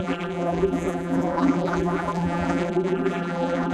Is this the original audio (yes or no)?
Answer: no